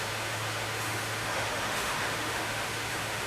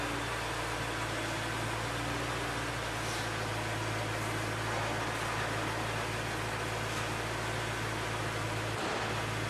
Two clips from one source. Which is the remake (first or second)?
first